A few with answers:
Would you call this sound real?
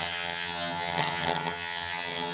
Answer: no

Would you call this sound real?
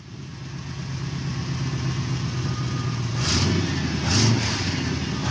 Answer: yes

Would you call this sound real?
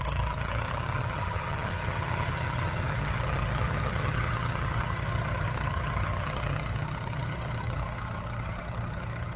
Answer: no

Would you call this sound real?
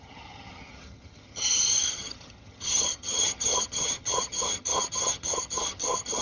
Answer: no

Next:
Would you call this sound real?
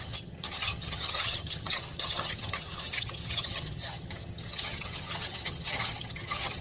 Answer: no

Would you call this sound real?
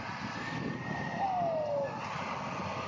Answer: yes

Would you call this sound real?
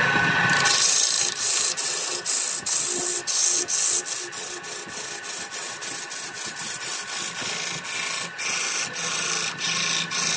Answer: yes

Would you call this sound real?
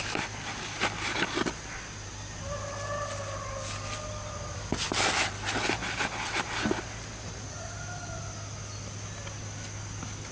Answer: yes